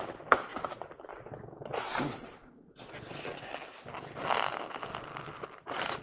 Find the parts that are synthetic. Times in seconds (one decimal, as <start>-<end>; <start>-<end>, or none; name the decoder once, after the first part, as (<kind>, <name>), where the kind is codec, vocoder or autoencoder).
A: 0.5-1.1 (vocoder, BigVGAN v2)